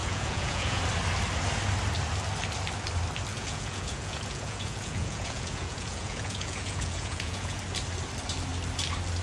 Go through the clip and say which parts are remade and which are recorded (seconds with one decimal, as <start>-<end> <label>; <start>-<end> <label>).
0.0-0.8 remade; 0.8-3.3 recorded; 3.3-7.6 remade; 7.6-9.2 recorded